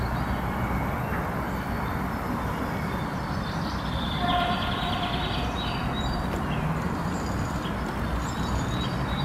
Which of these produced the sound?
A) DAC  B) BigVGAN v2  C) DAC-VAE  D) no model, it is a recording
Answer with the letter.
D